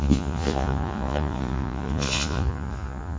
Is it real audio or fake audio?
fake